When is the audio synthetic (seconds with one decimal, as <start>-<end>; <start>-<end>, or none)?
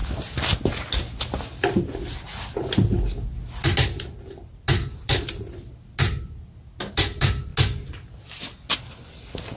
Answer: none